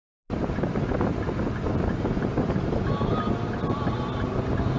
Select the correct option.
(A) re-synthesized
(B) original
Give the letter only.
B